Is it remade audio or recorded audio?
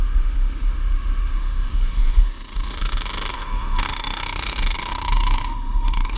remade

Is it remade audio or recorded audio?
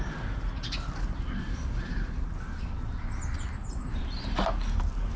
recorded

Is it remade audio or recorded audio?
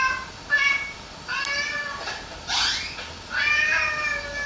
recorded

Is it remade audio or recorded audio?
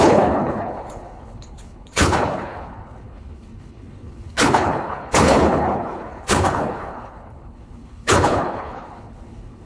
remade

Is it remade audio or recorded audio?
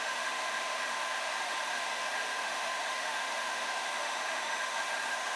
remade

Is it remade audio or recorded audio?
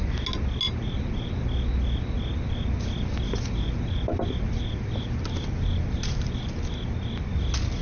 recorded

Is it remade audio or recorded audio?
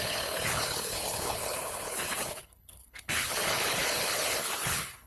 remade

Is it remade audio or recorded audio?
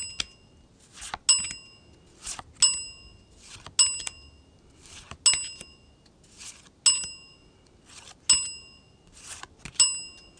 recorded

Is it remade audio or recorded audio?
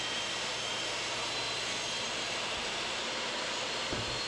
remade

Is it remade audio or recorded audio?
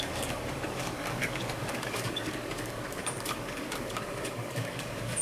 remade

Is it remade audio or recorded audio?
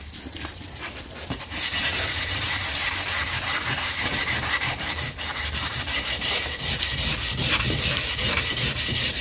remade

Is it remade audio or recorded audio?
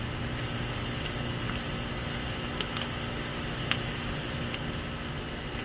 recorded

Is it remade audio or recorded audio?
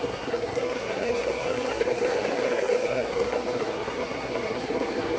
remade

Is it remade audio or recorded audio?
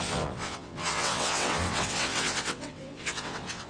remade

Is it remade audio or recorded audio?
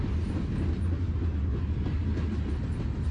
recorded